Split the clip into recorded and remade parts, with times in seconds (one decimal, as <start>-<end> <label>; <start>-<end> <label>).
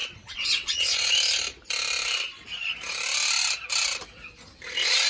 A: 0.0-1.1 remade; 1.1-5.1 recorded